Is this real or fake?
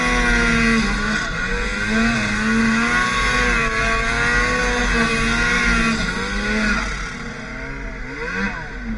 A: real